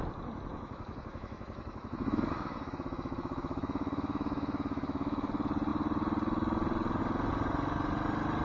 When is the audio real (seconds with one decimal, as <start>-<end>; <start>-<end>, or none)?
0.0-0.5; 5.3-8.4